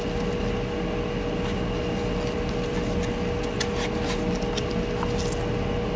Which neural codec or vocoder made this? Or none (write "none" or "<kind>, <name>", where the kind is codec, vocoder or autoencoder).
none